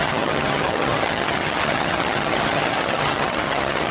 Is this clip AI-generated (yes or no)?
yes